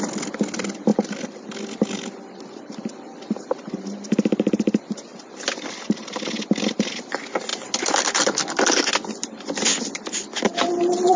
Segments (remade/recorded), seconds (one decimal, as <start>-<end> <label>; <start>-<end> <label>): 0.0-11.2 recorded